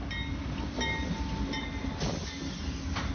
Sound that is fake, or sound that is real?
real